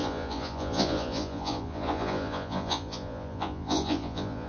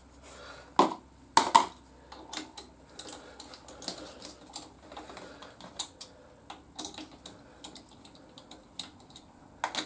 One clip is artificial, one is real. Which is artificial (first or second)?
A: first